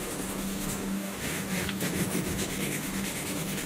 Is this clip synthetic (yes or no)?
yes